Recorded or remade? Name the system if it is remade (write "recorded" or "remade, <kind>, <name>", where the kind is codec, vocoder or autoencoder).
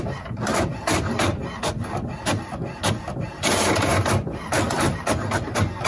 recorded